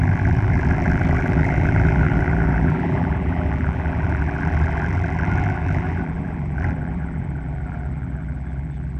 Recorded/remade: remade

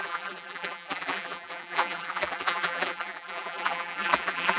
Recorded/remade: remade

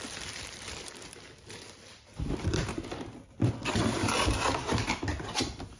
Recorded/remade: remade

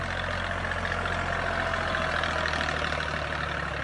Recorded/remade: recorded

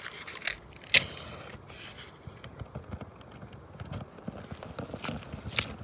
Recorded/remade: recorded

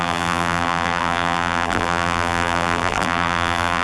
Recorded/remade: remade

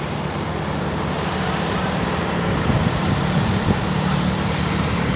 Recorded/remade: remade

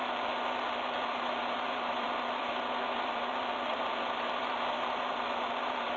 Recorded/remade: remade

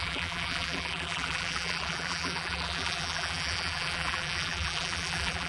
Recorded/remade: remade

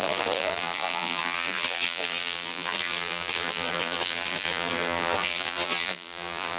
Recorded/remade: remade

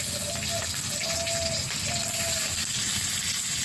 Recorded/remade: recorded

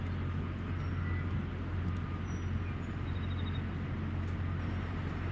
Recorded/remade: recorded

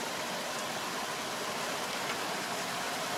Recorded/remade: remade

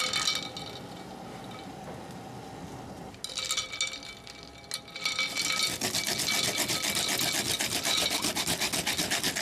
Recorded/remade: recorded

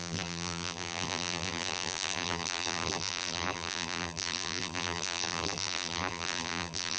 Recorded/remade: remade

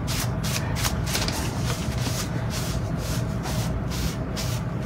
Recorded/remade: remade